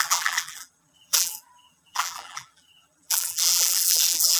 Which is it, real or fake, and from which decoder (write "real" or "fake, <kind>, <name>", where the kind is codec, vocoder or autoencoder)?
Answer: fake, vocoder, BigVGAN v2